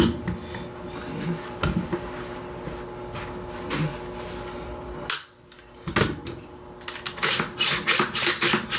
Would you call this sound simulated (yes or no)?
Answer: no